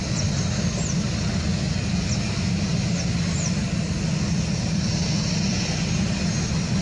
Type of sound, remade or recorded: recorded